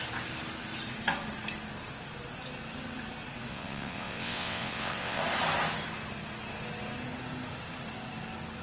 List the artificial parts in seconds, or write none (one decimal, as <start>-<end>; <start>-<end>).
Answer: 3.5-5.2